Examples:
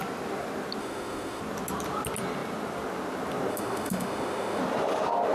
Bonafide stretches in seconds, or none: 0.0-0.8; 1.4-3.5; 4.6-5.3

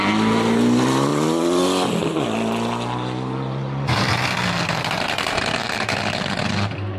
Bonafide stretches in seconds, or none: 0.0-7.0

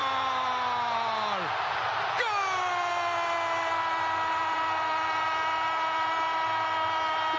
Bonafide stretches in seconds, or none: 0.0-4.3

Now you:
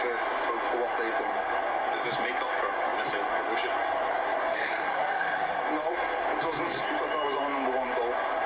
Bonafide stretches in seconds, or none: 0.0-4.5; 5.6-8.5

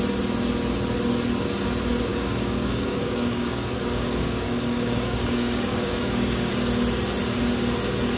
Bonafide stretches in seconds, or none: 0.0-2.1; 6.5-8.2